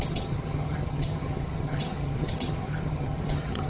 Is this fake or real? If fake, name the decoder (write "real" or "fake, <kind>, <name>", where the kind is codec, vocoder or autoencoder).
fake, vocoder, HiFi-GAN